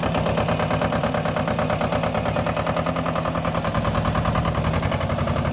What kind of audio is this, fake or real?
real